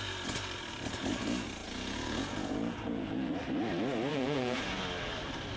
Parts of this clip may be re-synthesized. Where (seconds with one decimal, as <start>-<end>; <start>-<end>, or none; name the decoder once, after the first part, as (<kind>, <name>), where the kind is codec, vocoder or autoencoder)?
1.6-3.3 (vocoder, Vocos); 4.1-4.8